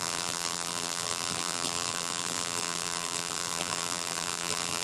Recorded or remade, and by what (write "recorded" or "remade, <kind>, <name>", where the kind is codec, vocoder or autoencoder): remade, vocoder, BigVGAN v2